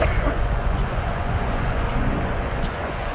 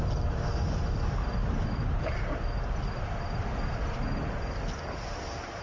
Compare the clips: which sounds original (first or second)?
second